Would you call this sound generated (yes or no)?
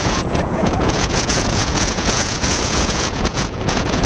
yes